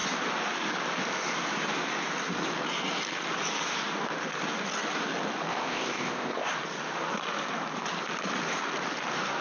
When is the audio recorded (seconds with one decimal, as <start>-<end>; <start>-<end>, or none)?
0.0-5.5; 6.5-9.4